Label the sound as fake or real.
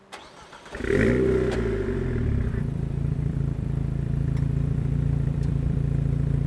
fake